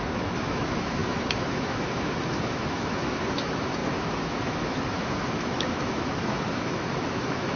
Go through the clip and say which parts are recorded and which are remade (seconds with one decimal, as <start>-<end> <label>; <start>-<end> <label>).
0.0-7.6 remade